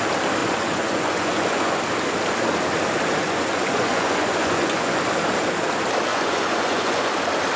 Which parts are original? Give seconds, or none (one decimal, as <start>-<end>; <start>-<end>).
0.0-0.4; 1.8-3.2; 5.0-6.1; 7.1-7.6